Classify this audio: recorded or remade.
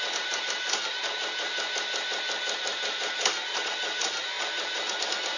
recorded